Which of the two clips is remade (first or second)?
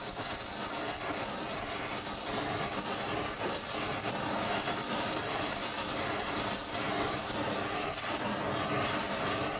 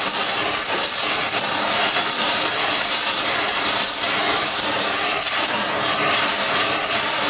second